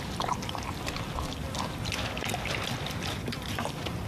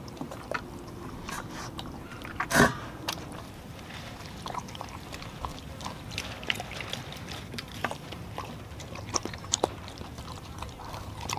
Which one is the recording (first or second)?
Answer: first